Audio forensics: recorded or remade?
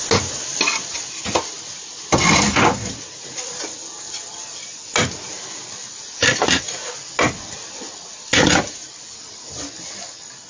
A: recorded